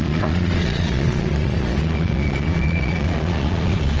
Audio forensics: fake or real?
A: fake